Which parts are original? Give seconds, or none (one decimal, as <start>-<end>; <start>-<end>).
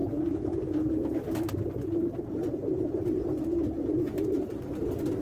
0.0-5.2